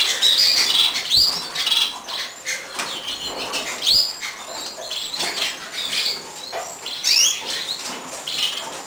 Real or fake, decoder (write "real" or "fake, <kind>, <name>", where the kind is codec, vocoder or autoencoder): real